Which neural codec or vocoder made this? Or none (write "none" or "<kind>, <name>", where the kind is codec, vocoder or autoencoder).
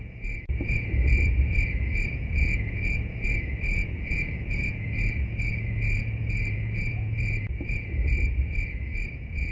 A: vocoder, Vocos